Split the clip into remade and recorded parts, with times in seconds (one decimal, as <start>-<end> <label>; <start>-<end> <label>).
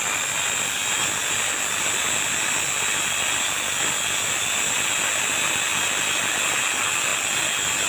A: 0.0-7.9 recorded